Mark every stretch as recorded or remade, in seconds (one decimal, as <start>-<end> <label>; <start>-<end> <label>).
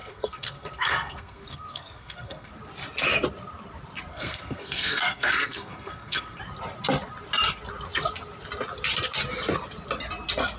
0.0-2.5 remade; 2.5-4.1 recorded; 4.1-6.4 remade; 6.4-10.6 recorded